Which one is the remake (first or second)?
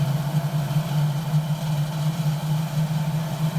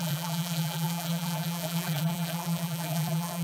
second